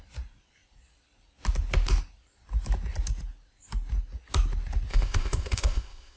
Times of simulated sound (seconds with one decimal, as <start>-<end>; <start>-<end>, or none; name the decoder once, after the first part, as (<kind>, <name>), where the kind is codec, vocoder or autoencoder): 4.9-6.2 (codec, ZipCodec)